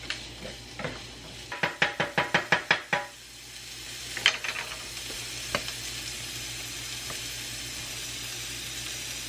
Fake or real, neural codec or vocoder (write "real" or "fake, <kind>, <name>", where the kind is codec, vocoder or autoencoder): real